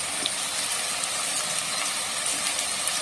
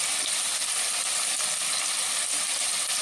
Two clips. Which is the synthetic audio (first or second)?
first